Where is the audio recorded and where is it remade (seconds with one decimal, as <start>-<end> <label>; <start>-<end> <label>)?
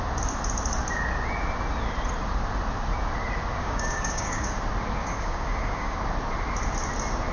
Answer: 0.0-3.6 recorded; 3.6-4.6 remade; 4.6-5.0 recorded; 5.0-6.0 remade; 6.0-7.3 recorded